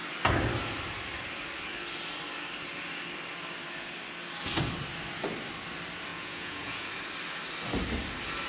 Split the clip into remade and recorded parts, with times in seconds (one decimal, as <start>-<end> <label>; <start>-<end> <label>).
0.0-6.1 recorded; 6.1-6.9 remade; 6.9-8.5 recorded